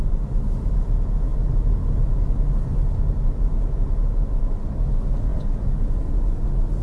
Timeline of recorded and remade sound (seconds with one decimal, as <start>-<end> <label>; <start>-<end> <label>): 0.0-5.3 recorded; 5.3-5.9 remade; 5.9-6.8 recorded